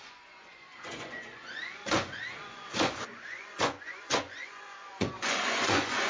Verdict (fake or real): fake